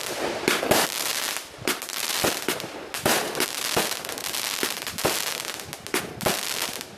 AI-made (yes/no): no